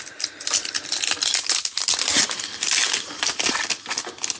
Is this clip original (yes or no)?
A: yes